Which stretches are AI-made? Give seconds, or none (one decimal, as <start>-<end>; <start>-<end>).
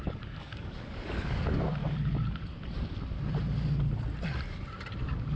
0.0-1.8; 5.0-5.4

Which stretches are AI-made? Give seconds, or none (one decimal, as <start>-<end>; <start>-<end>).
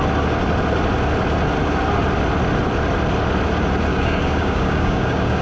3.9-5.4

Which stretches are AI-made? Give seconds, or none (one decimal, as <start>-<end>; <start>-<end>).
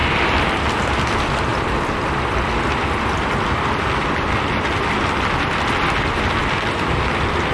none